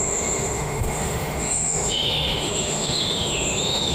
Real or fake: fake